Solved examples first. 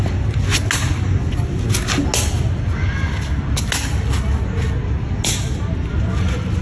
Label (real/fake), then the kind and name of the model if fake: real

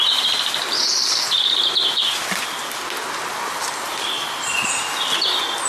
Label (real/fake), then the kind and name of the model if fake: real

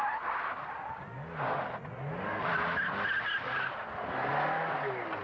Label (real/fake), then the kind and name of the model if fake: real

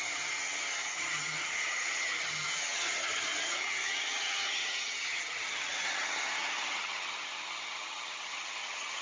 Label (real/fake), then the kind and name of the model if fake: fake, vocoder, HiFi-GAN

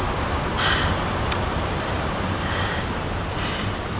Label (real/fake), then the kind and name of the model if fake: fake, vocoder, BigVGAN v2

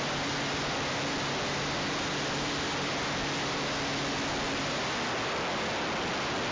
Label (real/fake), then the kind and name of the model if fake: real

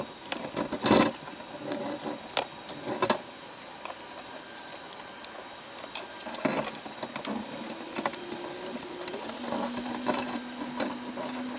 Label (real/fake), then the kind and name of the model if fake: real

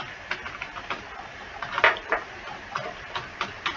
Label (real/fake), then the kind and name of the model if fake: real